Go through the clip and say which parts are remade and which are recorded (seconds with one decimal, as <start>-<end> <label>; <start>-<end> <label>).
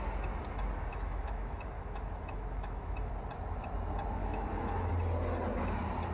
0.0-0.9 recorded; 0.9-3.1 remade; 3.1-4.2 recorded; 4.2-4.9 remade; 4.9-6.1 recorded